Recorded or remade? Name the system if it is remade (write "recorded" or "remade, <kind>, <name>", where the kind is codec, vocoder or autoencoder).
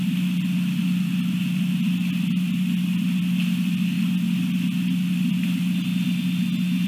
recorded